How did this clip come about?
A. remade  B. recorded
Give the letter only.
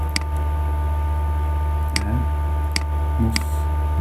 B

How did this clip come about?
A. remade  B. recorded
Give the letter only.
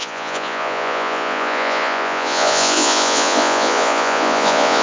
A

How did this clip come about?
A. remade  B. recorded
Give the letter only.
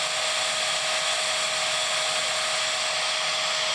B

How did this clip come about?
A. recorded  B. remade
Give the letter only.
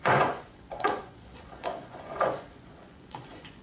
B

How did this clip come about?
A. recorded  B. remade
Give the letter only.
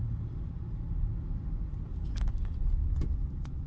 A